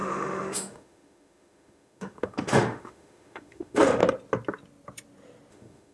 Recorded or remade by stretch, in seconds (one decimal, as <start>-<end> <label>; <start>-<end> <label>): 0.0-4.0 remade; 4.0-5.5 recorded; 5.5-5.9 remade